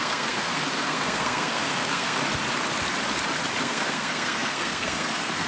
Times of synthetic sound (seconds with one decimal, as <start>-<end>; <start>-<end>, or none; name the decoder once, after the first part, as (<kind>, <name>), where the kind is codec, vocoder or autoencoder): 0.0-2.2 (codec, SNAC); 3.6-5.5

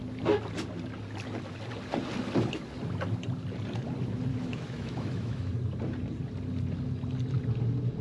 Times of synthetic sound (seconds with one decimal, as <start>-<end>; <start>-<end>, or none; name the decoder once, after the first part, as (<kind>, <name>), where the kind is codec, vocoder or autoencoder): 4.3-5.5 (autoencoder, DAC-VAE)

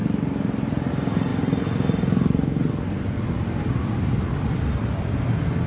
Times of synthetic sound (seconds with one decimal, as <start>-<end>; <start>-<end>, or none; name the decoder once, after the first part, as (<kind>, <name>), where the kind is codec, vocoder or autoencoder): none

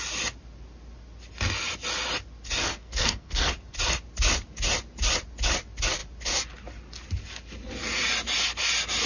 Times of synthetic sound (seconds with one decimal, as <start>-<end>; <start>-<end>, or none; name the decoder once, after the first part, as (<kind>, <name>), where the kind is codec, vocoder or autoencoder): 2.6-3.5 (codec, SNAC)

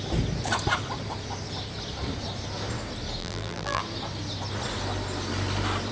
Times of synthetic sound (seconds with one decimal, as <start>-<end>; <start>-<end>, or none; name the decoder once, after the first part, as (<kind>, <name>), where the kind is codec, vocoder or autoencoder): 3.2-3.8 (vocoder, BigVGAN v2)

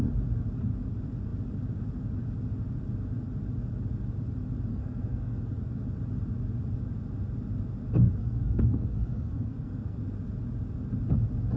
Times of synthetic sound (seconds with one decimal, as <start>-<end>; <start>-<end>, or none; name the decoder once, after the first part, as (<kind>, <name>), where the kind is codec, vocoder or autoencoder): 4.7-5.4 (codec, SNAC); 8.2-10.0

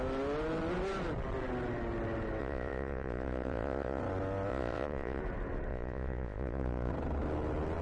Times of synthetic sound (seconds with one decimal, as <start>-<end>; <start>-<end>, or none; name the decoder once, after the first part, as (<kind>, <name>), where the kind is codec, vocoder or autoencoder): 2.4-4.0 (vocoder, Vocos); 4.5-5.2; 5.7-6.9

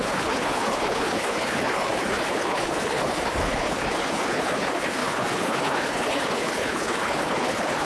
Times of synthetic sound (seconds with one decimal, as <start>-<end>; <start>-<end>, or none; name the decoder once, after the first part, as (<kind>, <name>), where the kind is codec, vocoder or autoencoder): 0.0-7.9 (codec, HILCodec)